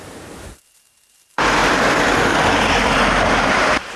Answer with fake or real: fake